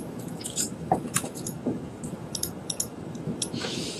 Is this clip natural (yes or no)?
no